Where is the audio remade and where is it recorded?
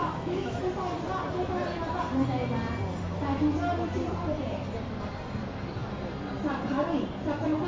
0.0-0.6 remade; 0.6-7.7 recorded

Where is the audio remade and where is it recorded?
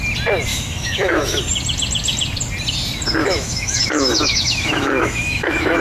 0.0-0.5 recorded; 0.5-1.4 remade; 1.4-3.2 recorded; 3.2-5.8 remade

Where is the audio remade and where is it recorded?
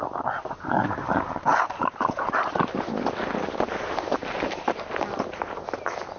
0.0-1.5 recorded; 1.5-2.6 remade; 2.6-4.2 recorded; 4.2-5.6 remade; 5.6-6.2 recorded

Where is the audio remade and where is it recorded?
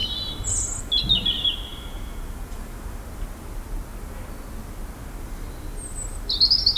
0.0-6.8 recorded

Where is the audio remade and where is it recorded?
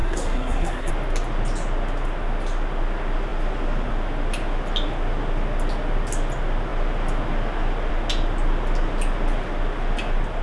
0.0-0.9 remade; 0.9-10.4 recorded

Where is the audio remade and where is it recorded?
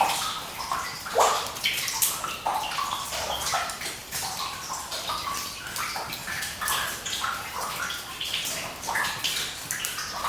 0.0-4.0 recorded; 4.0-5.3 remade; 5.3-10.3 recorded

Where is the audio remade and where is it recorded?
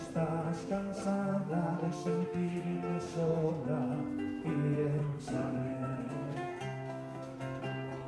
0.0-0.6 recorded; 0.6-3.5 remade; 3.5-5.0 recorded; 5.0-7.6 remade; 7.6-8.1 recorded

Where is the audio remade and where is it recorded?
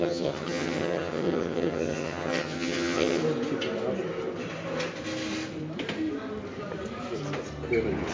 0.0-3.2 remade; 3.2-8.1 recorded